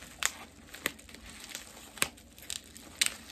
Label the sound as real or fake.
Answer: real